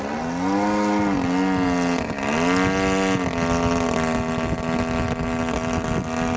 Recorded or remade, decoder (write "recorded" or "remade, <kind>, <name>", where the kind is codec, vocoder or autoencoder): recorded